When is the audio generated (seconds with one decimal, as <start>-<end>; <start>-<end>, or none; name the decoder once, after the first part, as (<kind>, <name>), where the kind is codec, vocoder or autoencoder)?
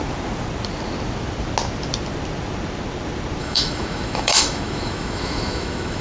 3.4-6.0 (autoencoder, DAC-VAE)